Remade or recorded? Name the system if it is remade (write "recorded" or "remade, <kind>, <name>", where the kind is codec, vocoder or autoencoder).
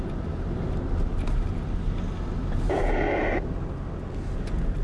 recorded